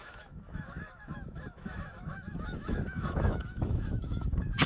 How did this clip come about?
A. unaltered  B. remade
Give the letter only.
B